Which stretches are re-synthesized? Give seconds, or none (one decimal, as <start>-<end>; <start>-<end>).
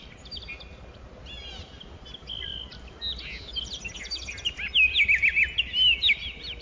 none